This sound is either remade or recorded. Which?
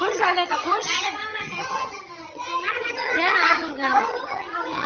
remade